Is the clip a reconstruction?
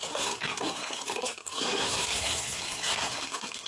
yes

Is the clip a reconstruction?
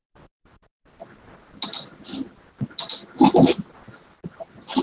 no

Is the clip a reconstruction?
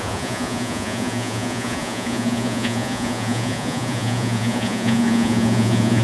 yes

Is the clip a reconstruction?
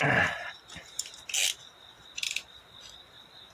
no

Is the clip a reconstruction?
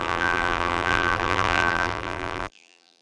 yes